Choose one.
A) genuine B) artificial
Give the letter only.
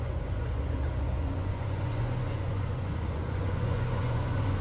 B